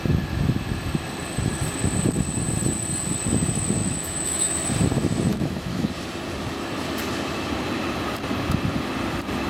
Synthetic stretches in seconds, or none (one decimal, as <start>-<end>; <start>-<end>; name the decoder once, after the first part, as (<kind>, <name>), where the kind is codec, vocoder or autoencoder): 3.8-4.5 (autoencoder, DAC-VAE); 5.3-5.9